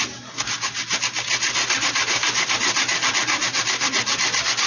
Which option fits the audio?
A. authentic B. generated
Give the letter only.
A